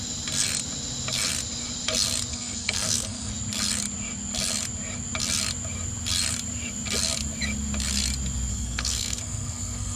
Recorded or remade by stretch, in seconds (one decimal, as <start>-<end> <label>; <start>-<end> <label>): 0.0-2.3 recorded; 2.3-3.3 remade; 3.3-8.5 recorded; 8.5-10.0 remade